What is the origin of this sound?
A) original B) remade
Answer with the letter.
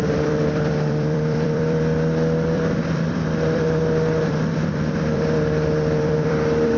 B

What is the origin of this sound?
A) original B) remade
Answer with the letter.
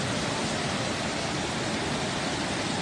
A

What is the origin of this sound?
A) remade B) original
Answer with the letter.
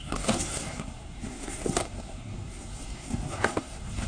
A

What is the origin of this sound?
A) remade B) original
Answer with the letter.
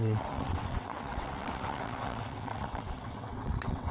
A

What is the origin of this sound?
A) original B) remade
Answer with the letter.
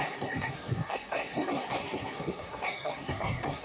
B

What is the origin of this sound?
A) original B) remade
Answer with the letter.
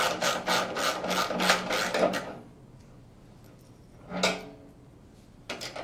A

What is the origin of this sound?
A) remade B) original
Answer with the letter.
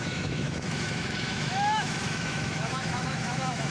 A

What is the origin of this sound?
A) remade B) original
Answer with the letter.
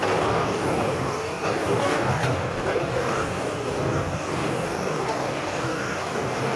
A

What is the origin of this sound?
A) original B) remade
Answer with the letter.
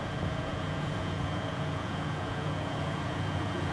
B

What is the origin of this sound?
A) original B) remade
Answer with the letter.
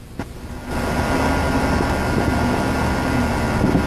A